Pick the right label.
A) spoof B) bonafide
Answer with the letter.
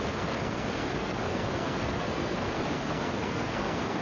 A